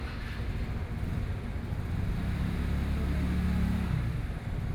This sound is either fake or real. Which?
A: real